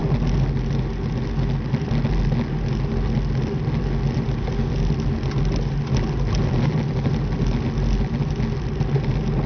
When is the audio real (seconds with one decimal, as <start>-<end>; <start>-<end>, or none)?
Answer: 0.0-9.5